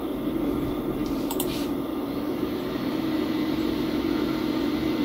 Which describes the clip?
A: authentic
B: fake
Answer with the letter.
B